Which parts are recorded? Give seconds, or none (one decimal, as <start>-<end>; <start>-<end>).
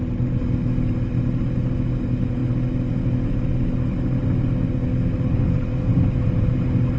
0.0-7.0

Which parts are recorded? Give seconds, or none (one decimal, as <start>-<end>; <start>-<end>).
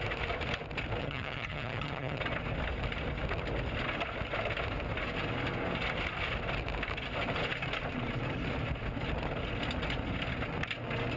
0.0-1.0; 2.2-11.2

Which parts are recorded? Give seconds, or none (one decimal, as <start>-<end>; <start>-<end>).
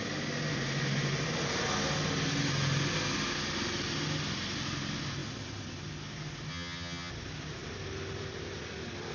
0.0-6.5; 7.1-9.1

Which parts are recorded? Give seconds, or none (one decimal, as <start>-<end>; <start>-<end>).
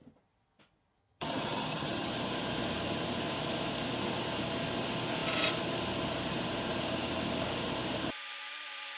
0.0-1.0; 2.1-9.0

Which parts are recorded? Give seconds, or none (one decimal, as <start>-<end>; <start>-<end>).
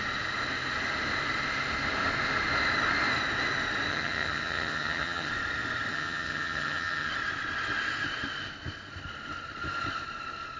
0.0-3.9; 5.3-5.9; 7.1-10.6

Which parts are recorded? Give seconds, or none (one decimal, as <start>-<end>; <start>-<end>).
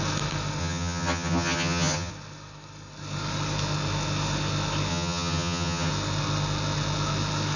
0.0-0.6; 2.1-4.9; 5.9-7.6